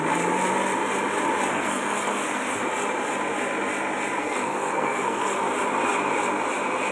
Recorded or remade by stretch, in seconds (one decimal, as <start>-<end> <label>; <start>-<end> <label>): 0.0-1.5 recorded; 1.5-2.7 remade; 2.7-4.2 recorded; 4.2-5.4 remade; 5.4-6.9 recorded